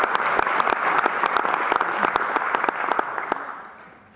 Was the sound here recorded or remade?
recorded